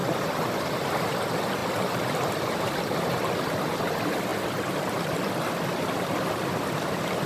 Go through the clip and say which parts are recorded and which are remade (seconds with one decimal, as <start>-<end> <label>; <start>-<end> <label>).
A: 0.0-7.3 recorded